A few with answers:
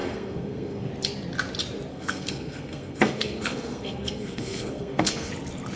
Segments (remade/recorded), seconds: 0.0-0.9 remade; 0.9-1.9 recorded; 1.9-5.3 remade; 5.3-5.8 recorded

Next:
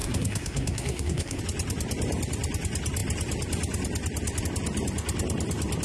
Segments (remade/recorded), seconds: 0.0-1.4 remade; 1.4-5.8 recorded

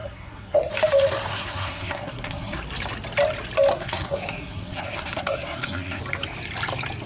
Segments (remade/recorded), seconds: 0.0-0.7 remade; 0.7-1.3 recorded; 1.3-2.6 remade; 2.6-3.7 recorded; 3.7-6.0 remade; 6.0-7.1 recorded

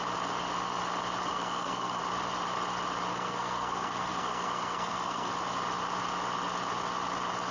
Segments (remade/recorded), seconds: 0.0-1.3 recorded; 1.3-2.0 remade; 2.0-3.1 recorded; 3.1-5.3 remade; 5.3-7.5 recorded

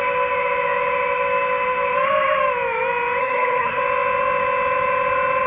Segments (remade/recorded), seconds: 0.0-3.2 recorded; 3.2-3.8 remade; 3.8-5.5 recorded

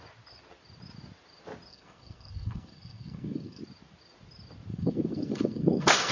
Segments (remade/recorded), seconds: 0.0-1.7 recorded; 1.7-3.6 remade; 3.6-4.7 recorded; 4.7-6.1 remade

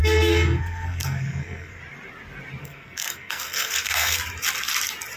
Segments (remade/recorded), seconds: 0.0-1.8 remade; 1.8-2.6 recorded; 2.6-4.2 remade; 4.2-5.2 recorded

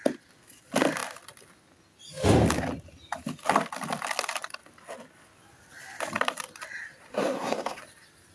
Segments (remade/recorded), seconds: 0.0-7.1 recorded; 7.1-7.8 remade; 7.8-8.3 recorded